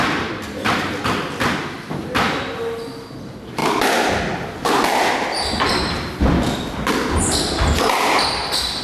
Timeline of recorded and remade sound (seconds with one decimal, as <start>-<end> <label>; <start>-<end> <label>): 0.0-8.8 recorded